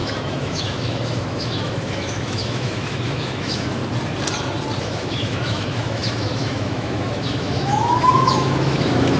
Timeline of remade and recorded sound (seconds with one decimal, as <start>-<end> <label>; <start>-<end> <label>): 0.0-3.8 remade; 3.8-4.8 recorded; 4.8-9.2 remade